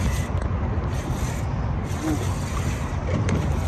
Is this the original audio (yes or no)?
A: yes